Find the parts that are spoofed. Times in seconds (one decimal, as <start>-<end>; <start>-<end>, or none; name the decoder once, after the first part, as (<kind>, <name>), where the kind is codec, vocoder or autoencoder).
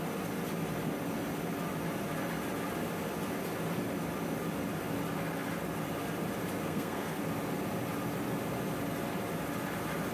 6.6-7.2 (codec, SNAC)